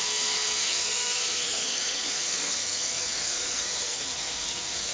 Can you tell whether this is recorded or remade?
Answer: remade